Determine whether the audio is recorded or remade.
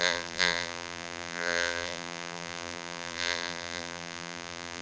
remade